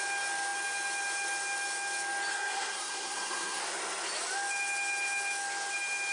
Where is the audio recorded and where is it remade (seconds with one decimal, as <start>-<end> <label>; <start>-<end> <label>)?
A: 0.0-2.3 recorded; 2.3-3.6 remade; 3.6-6.1 recorded